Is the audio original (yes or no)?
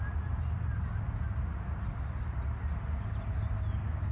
yes